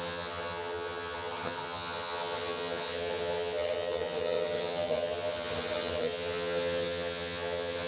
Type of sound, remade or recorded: remade